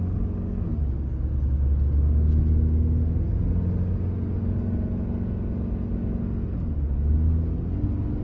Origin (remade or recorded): recorded